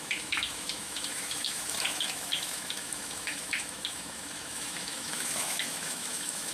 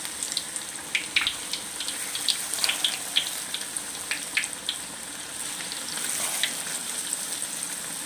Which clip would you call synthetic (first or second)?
first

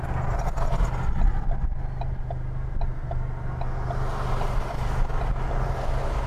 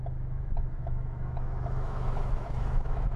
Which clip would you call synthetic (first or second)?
second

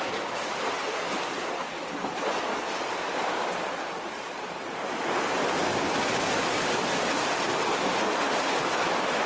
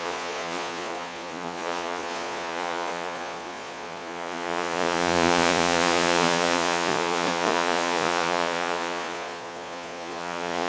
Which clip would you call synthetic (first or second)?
second